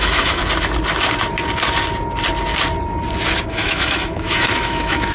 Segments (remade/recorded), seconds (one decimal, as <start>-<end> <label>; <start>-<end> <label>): 0.0-0.4 remade; 0.4-3.5 recorded; 3.5-5.1 remade